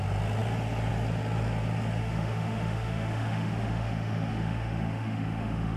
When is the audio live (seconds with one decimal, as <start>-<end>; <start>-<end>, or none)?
0.0-2.0